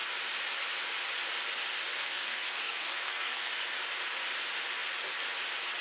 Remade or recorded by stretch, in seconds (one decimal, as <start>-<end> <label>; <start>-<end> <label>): 0.0-1.9 recorded; 1.9-3.5 remade; 3.5-5.8 recorded